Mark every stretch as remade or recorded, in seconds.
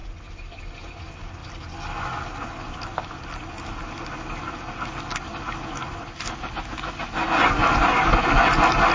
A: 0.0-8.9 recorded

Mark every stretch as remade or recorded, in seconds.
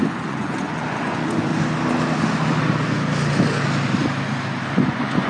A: 0.0-1.5 remade; 1.5-4.7 recorded; 4.7-5.3 remade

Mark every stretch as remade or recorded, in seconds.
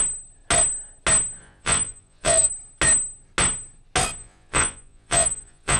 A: 0.0-1.4 recorded; 1.4-2.5 remade; 2.5-4.2 recorded; 4.2-5.8 remade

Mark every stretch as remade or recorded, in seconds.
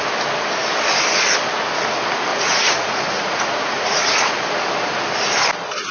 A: 0.0-2.3 recorded; 2.3-4.4 remade; 4.4-5.9 recorded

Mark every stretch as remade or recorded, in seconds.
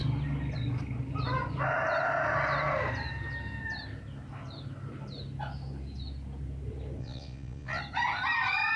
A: 0.0-7.0 recorded; 7.0-7.8 remade; 7.8-8.8 recorded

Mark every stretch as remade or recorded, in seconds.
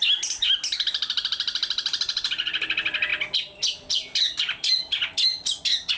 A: 0.0-6.0 recorded